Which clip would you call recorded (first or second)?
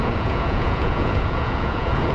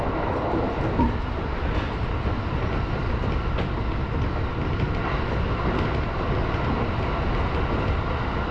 second